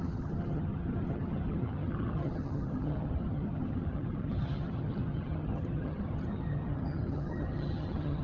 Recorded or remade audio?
remade